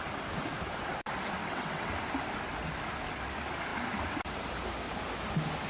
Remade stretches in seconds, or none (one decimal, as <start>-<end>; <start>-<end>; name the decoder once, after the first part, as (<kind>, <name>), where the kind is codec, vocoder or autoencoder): 1.4-1.9 (vocoder, WaveNeXt)